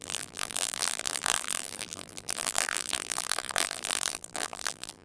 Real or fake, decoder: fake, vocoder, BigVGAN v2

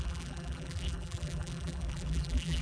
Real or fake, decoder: fake, vocoder, BigVGAN v2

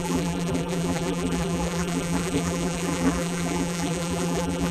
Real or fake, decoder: fake, vocoder, BigVGAN v2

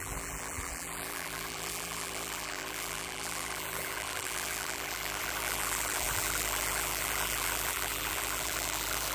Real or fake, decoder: fake, vocoder, BigVGAN v2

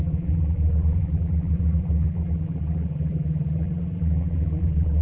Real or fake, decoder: fake, vocoder, BigVGAN v2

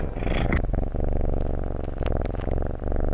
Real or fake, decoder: real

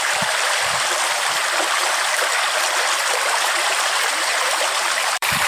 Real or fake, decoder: fake, vocoder, BigVGAN v2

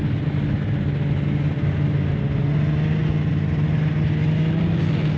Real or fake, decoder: real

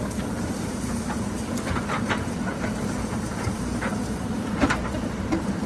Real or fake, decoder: fake, vocoder, BigVGAN v2